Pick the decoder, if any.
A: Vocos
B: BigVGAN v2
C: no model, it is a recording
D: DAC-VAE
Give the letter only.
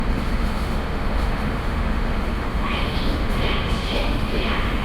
D